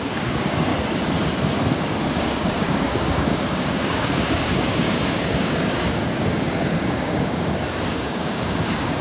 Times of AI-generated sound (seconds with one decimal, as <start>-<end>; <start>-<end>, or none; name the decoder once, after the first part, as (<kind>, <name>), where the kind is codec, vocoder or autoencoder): 0.0-0.7 (codec, DAC); 2.1-9.0